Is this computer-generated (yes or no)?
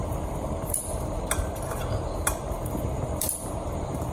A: yes